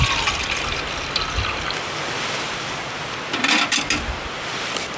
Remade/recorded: recorded